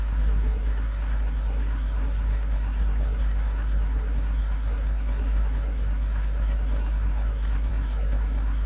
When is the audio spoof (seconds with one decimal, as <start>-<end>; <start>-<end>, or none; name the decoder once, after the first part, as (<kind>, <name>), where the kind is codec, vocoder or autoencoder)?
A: 0.0-8.7 (codec, SNAC)